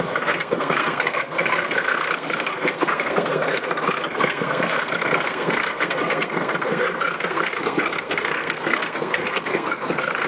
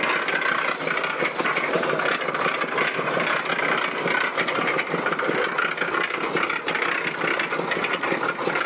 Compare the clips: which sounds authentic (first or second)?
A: second